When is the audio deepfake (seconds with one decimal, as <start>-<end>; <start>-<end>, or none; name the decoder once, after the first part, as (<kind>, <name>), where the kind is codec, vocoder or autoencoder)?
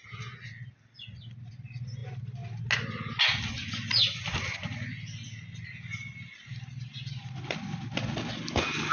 none